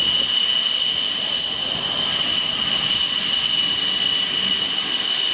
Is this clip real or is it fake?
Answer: real